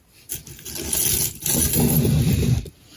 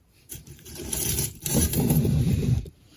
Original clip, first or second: first